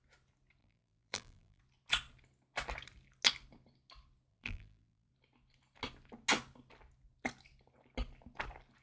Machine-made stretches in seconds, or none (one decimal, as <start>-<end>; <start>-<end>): 0.6-1.6; 4.3-5.1